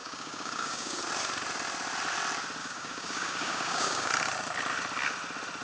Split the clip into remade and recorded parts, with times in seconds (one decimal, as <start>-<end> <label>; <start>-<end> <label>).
0.0-1.0 remade; 1.0-2.6 recorded; 2.6-4.1 remade; 4.1-5.6 recorded

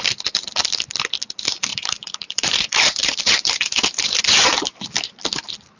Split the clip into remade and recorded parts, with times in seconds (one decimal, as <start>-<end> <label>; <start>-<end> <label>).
0.0-1.7 recorded; 1.7-4.8 remade; 4.8-5.8 recorded